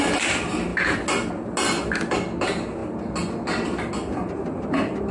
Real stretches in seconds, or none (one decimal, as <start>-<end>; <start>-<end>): 0.0-5.1